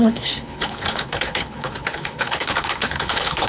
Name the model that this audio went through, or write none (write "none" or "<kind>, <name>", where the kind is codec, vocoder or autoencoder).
codec, HILCodec